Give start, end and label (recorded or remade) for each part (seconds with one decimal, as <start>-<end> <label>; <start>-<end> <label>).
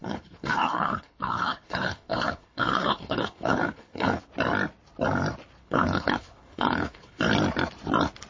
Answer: 0.0-4.2 remade; 4.2-5.6 recorded; 5.6-7.2 remade; 7.2-8.3 recorded